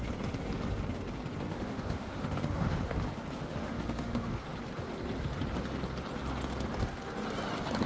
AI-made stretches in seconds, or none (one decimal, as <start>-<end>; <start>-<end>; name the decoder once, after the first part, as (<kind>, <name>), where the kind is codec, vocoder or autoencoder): 1.5-3.0 (autoencoder, DAC-VAE); 3.4-4.3

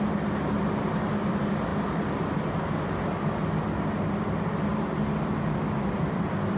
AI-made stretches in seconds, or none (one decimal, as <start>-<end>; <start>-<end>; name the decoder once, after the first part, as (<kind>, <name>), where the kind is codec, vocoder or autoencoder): none

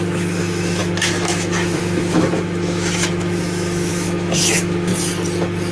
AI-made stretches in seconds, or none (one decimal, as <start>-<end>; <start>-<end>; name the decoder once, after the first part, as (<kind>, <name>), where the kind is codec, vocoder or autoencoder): 0.0-4.9 (autoencoder, DAC-VAE)

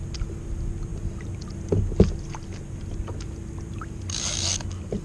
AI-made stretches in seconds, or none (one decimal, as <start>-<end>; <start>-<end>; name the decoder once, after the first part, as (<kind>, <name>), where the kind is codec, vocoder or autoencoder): none

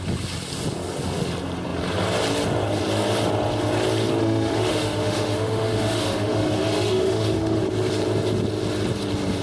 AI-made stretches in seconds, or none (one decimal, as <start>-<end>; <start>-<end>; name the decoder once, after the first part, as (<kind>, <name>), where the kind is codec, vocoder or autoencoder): 4.2-7.6 (autoencoder, DAC-VAE)

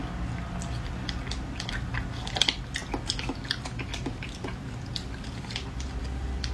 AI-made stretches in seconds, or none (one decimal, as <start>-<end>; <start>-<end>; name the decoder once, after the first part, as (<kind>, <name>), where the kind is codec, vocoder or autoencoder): none

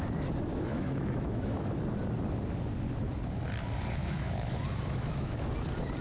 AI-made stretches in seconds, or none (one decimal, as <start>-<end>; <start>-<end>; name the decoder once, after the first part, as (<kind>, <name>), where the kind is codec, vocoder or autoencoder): 0.5-1.8 (autoencoder, DAC-VAE); 4.0-5.5